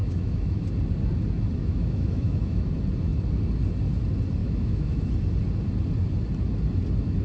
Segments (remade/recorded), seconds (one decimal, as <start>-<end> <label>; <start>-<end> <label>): 0.0-0.6 remade; 0.6-1.6 recorded; 1.6-2.6 remade; 2.6-4.4 recorded; 4.4-5.1 remade; 5.1-7.2 recorded